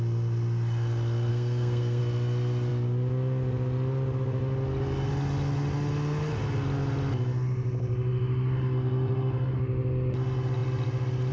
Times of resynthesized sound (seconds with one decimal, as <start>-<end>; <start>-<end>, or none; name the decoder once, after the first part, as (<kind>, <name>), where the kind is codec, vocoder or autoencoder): 1.3-2.0 (codec, SNAC)